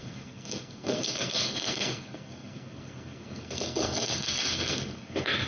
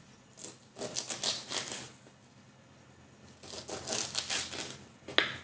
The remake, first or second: first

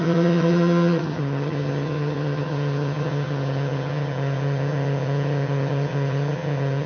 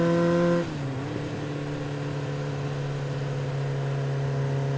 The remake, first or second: first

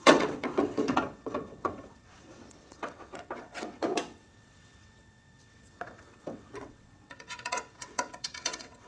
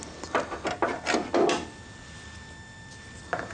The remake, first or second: first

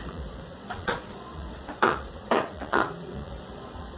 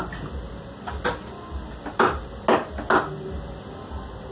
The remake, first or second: first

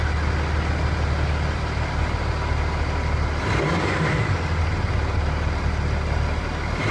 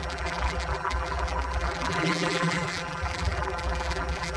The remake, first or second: second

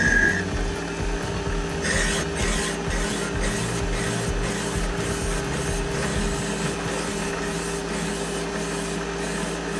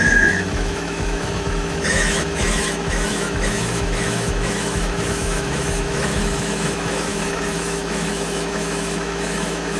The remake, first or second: second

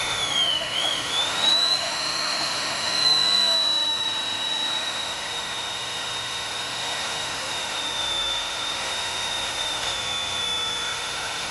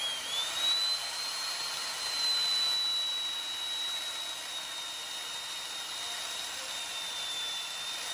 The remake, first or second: first